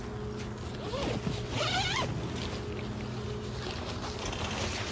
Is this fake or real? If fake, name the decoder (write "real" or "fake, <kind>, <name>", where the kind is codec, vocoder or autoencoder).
real